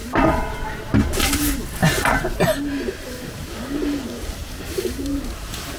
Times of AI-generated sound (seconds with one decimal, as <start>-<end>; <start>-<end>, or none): none